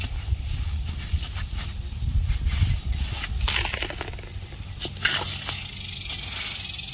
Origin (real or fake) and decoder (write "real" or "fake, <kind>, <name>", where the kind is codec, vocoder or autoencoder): real